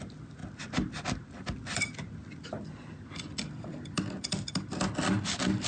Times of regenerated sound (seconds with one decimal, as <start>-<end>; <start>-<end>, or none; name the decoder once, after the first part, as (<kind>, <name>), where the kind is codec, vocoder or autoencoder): none